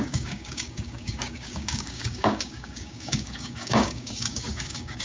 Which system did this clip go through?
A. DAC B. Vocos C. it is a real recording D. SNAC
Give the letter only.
A